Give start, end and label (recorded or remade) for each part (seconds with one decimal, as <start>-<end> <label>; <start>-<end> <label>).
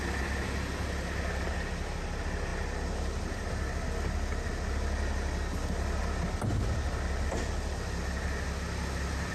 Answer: 0.0-9.3 recorded